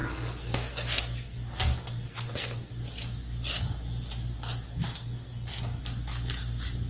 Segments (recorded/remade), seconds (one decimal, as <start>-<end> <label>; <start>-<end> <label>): 0.0-2.7 remade; 2.7-4.7 recorded; 4.7-5.8 remade; 5.8-6.9 recorded